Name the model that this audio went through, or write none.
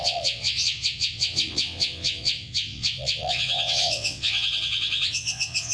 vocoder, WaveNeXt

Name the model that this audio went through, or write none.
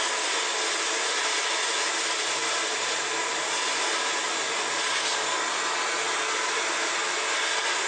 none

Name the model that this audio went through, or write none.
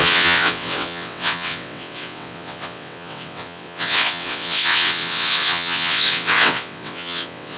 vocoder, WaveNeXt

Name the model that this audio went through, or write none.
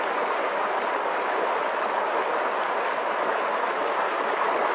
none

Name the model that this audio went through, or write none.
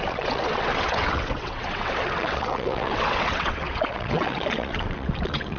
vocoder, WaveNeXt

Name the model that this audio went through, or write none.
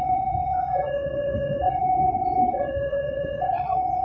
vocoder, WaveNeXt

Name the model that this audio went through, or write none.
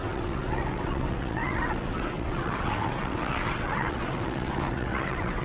vocoder, WaveNeXt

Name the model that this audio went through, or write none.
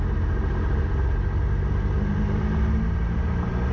none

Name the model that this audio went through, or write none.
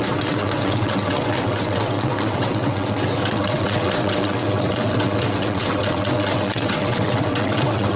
vocoder, WaveNeXt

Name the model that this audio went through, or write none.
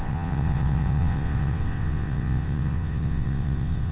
vocoder, WaveNeXt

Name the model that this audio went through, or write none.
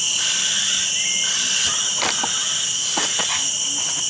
none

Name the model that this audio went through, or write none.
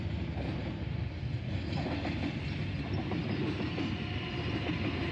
none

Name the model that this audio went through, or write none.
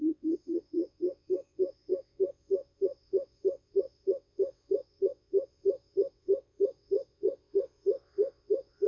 vocoder, WaveNeXt